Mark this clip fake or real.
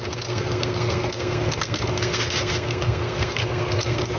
fake